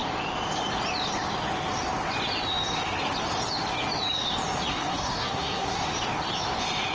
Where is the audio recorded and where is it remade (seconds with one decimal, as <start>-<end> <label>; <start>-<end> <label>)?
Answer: 0.0-4.7 recorded; 4.7-5.8 remade; 5.8-6.9 recorded